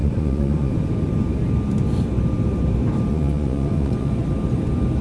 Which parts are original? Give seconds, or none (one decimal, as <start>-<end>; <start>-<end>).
0.7-3.1; 4.1-5.0